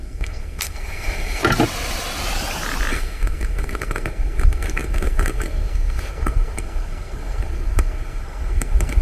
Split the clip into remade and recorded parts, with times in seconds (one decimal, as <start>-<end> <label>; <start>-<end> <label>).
0.0-1.4 remade; 1.4-2.9 recorded; 2.9-9.0 remade